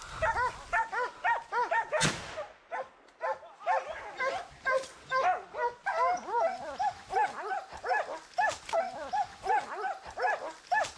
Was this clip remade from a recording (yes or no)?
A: no